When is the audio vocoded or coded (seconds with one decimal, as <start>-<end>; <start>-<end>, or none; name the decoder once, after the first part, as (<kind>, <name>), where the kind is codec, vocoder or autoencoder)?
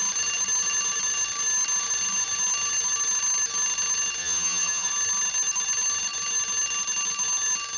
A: 4.2-4.9 (vocoder, HiFi-GAN)